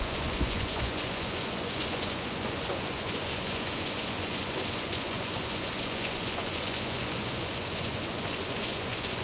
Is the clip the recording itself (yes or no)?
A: no